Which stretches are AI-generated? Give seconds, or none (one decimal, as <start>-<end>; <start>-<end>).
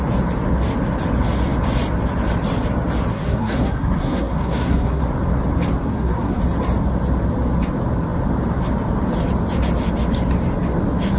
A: 3.1-5.0; 5.8-6.4